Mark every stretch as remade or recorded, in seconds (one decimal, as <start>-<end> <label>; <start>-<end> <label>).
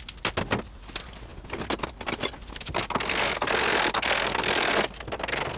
0.0-5.6 recorded